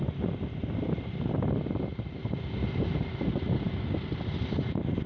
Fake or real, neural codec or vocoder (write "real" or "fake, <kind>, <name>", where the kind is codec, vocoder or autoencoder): real